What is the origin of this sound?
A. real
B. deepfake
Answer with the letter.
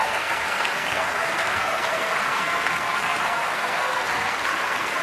B